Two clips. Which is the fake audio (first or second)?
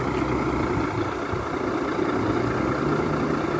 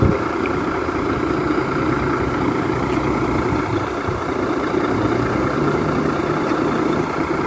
second